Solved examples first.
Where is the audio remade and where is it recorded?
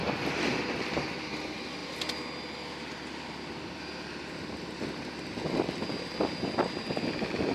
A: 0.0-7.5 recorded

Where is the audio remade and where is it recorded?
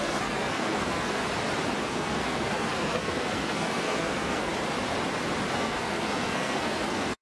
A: 0.0-1.2 remade; 1.2-1.8 recorded; 1.8-4.5 remade; 4.5-5.5 recorded; 5.5-7.2 remade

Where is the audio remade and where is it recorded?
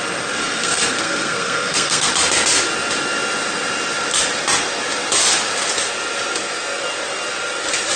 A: 0.0-0.4 recorded; 0.4-2.1 remade; 2.1-8.0 recorded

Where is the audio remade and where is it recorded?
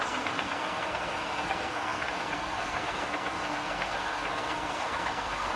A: 0.0-5.6 remade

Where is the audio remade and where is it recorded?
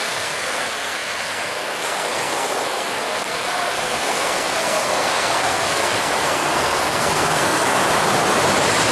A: 0.0-7.8 remade; 7.8-8.9 recorded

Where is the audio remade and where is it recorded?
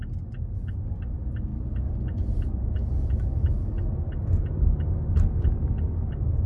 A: 0.0-6.5 recorded